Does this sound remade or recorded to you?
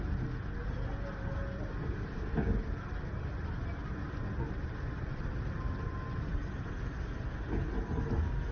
recorded